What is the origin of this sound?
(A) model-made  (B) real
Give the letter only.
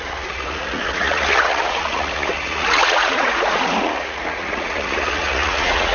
A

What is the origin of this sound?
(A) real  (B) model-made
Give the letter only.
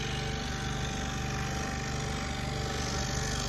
A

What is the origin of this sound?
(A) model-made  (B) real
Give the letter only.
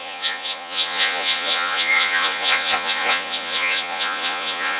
A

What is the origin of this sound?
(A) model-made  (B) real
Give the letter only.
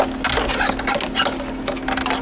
B